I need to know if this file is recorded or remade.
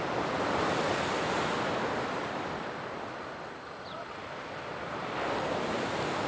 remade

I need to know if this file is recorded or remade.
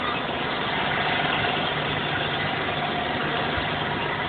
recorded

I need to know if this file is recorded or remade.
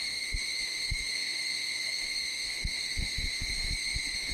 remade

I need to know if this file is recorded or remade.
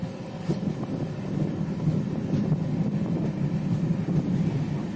recorded